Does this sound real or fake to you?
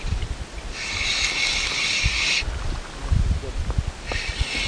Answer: real